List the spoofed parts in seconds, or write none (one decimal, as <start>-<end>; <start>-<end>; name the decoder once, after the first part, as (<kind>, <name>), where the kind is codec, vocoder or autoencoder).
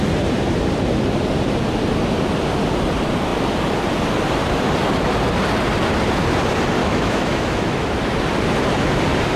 6.8-7.9 (autoencoder, DAC-VAE)